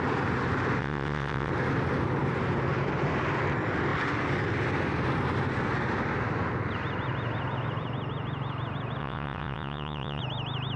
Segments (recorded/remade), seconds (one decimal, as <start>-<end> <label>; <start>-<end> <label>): 0.0-0.8 recorded; 0.8-1.5 remade; 1.5-9.0 recorded; 9.0-10.2 remade; 10.2-10.8 recorded